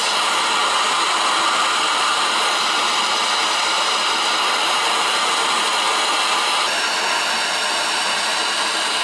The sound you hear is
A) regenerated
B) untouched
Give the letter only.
A